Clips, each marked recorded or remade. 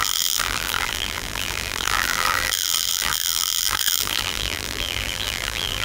remade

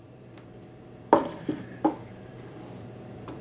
remade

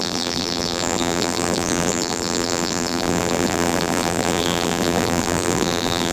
remade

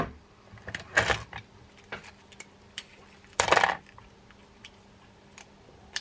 remade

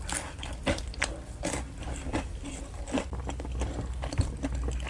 recorded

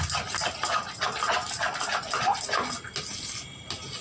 recorded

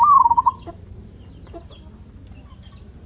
recorded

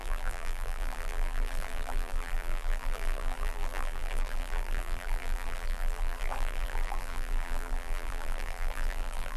remade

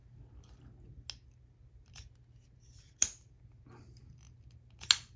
recorded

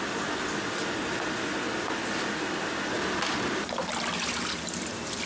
recorded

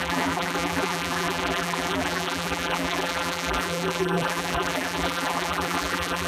remade